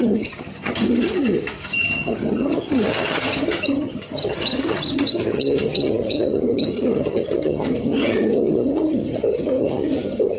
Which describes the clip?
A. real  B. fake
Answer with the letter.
B